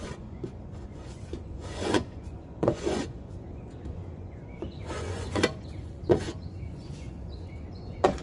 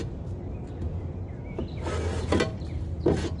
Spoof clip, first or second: first